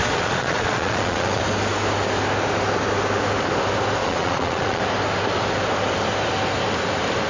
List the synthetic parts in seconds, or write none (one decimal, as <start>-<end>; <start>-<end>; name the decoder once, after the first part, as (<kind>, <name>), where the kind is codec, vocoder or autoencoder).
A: 0.0-1.4 (vocoder, Vocos); 4.0-4.8